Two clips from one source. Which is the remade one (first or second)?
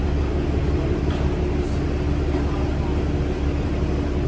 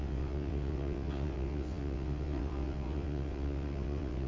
second